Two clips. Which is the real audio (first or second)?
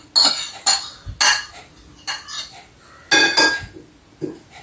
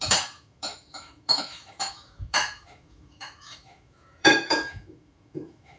first